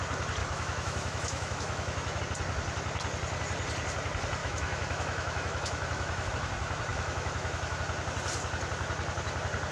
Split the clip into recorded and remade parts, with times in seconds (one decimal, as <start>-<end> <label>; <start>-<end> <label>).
0.0-0.4 recorded; 0.4-2.2 remade; 2.2-4.4 recorded; 4.4-6.3 remade; 6.3-6.9 recorded; 6.9-7.8 remade; 7.8-9.7 recorded